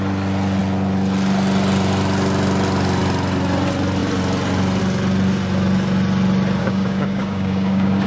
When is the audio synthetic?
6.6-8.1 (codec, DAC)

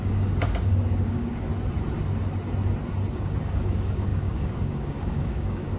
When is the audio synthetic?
0.0-1.5 (codec, DAC); 3.1-5.8

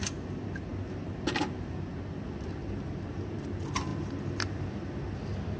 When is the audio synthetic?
none